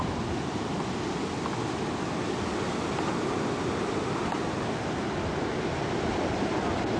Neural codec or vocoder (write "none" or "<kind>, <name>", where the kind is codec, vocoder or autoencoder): none